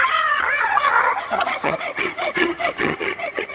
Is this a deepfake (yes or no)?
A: yes